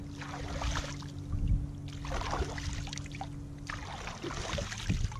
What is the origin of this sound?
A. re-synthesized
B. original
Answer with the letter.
B